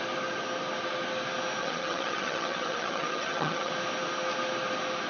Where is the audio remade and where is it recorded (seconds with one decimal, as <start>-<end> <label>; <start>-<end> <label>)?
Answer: 0.0-1.6 recorded; 1.6-3.7 remade; 3.7-5.1 recorded